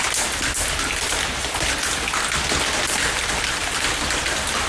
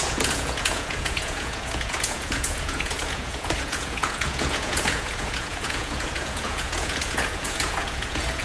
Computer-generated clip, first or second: second